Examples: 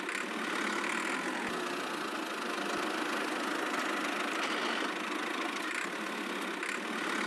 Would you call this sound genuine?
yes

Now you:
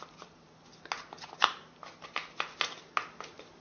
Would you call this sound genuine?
yes